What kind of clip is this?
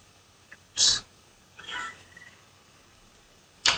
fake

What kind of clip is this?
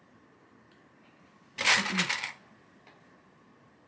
real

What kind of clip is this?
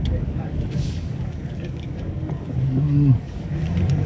fake